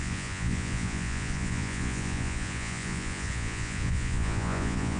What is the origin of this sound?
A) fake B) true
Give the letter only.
A